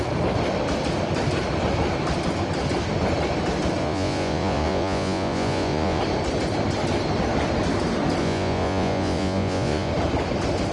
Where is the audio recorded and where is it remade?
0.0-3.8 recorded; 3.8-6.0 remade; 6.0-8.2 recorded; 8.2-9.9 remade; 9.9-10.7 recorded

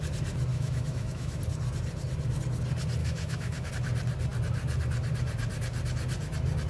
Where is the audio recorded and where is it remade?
0.0-0.5 recorded; 0.5-1.4 remade; 1.4-3.0 recorded; 3.0-3.7 remade; 3.7-6.7 recorded